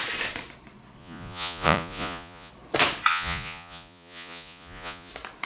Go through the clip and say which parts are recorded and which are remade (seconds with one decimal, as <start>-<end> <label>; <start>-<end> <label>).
0.0-1.0 recorded; 1.0-2.5 remade; 2.5-3.1 recorded; 3.1-5.1 remade; 5.1-5.5 recorded